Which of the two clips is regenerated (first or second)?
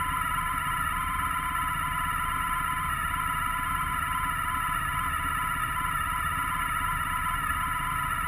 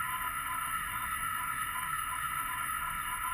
second